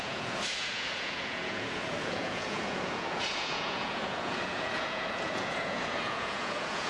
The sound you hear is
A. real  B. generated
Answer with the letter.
B